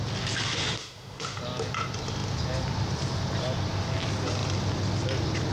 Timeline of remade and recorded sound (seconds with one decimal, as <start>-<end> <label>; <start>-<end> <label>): 0.0-0.4 recorded; 0.4-1.4 remade; 1.4-5.5 recorded